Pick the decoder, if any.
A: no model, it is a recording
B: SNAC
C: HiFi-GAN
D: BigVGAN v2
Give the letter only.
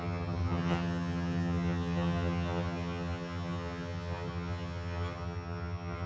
C